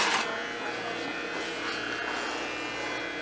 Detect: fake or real real